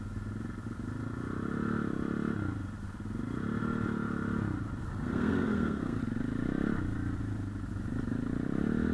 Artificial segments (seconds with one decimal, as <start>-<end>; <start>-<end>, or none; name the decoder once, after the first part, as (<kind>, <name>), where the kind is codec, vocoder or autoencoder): 4.8-6.0 (codec, SNAC)